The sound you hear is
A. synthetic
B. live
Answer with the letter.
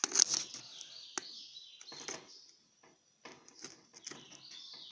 B